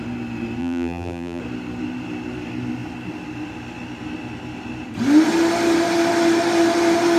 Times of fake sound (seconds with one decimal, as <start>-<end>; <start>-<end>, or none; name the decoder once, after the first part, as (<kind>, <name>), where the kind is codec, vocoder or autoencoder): 0.6-1.4 (vocoder, BigVGAN v2)